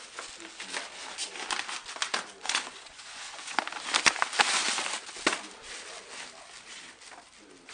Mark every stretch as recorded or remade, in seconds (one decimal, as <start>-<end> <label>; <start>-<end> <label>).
0.0-2.4 recorded; 2.4-3.6 remade; 3.6-7.7 recorded